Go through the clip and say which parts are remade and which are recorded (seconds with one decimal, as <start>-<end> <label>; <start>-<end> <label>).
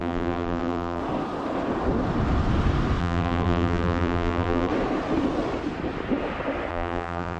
0.0-1.0 remade; 1.0-3.0 recorded; 3.0-4.7 remade; 4.7-6.7 recorded; 6.7-7.4 remade